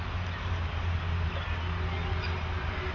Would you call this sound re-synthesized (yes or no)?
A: no